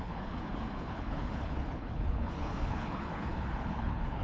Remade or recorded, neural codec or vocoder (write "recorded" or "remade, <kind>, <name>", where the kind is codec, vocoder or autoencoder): remade, codec, HILCodec